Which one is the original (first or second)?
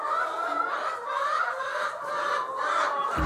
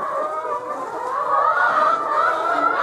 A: second